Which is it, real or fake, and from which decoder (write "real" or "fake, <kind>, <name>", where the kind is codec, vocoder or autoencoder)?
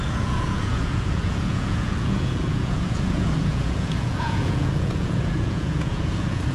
fake, vocoder, Vocos